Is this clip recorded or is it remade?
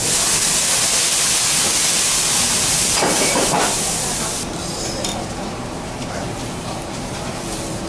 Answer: remade